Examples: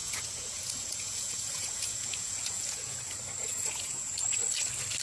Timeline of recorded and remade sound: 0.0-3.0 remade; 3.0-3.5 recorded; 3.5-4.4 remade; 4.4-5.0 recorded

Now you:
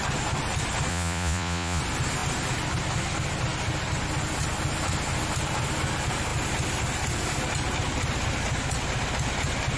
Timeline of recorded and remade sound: 0.0-0.9 recorded; 0.9-1.8 remade; 1.8-9.8 recorded